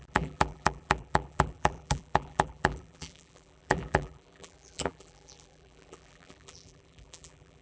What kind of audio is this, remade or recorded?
remade